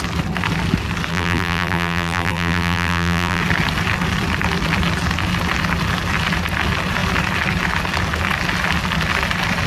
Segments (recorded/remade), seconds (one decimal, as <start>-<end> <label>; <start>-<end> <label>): 0.0-1.1 recorded; 1.1-3.4 remade; 3.4-9.7 recorded